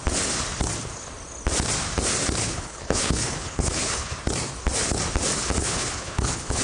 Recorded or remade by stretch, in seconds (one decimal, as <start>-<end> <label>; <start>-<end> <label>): 0.0-2.4 recorded; 2.4-4.1 remade; 4.1-5.6 recorded; 5.6-6.6 remade